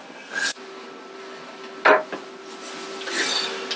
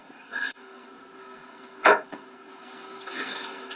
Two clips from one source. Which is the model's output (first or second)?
second